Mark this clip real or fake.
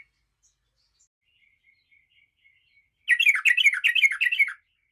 real